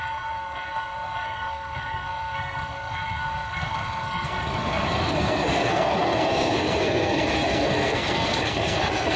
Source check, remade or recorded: remade